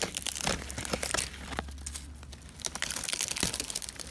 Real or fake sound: real